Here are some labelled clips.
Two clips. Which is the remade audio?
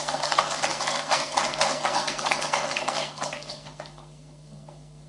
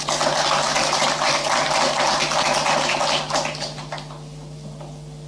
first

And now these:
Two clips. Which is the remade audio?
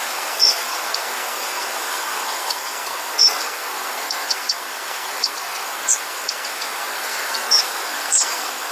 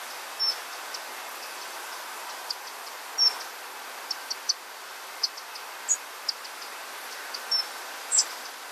first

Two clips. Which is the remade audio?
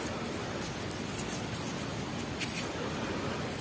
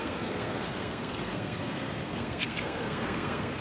second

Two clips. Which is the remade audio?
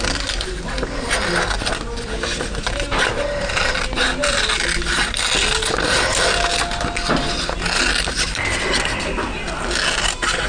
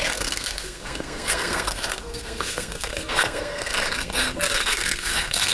second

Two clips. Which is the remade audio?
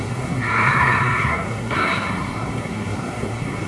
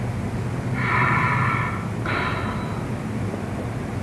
first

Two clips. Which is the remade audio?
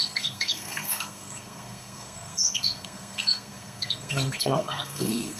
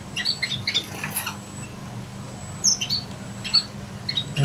first